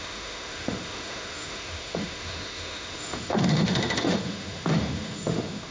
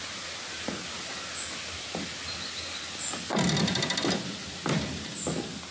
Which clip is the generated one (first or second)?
first